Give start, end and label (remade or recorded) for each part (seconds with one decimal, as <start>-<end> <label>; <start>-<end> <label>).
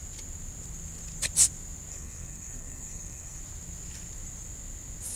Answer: 0.0-1.9 recorded; 1.9-3.4 remade; 3.4-5.2 recorded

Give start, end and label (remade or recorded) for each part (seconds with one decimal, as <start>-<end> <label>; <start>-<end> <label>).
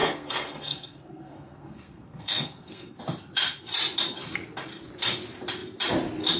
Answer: 0.0-3.0 remade; 3.0-6.4 recorded